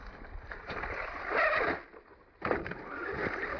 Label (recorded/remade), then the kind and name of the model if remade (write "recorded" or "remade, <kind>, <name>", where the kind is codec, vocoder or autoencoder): recorded